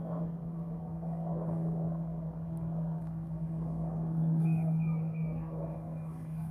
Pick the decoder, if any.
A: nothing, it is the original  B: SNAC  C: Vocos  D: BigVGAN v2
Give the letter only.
B